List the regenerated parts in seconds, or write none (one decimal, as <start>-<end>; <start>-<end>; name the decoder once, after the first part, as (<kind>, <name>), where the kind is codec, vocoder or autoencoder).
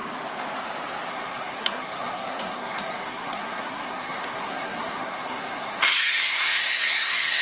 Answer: 1.1-7.4 (codec, SNAC)